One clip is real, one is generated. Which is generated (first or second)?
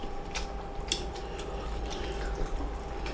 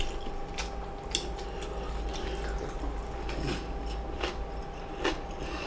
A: first